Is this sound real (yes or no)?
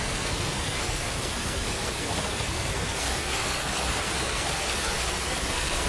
no